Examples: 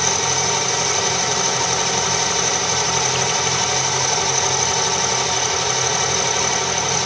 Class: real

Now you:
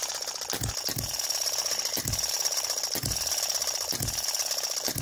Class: real